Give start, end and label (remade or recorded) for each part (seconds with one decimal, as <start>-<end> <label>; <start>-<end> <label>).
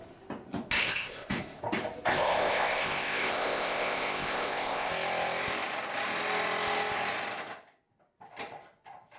0.0-0.8 recorded; 0.8-1.6 remade; 1.6-2.1 recorded; 2.1-4.9 remade; 4.9-9.2 recorded